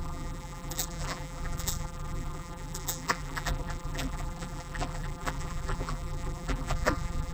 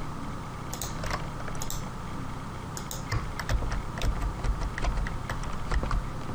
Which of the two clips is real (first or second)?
second